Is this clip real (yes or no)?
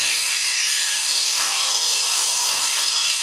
no